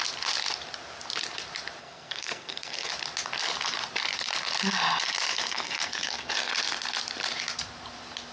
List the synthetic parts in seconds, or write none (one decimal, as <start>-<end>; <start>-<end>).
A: 1.8-2.9; 5.3-6.5